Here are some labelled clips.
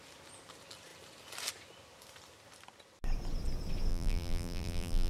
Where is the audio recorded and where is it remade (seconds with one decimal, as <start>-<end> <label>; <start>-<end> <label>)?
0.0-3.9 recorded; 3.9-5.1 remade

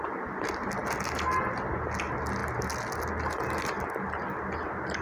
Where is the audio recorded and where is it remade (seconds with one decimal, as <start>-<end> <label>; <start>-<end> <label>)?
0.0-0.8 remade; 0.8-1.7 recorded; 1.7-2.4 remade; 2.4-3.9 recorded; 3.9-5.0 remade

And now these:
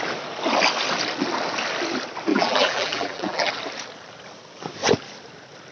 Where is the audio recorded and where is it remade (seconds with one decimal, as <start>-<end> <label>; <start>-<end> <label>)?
0.0-2.3 recorded; 2.3-3.5 remade; 3.5-5.7 recorded

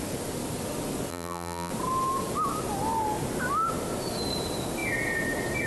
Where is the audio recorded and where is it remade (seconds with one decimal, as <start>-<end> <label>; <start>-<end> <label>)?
0.0-1.1 recorded; 1.1-1.7 remade; 1.7-5.7 recorded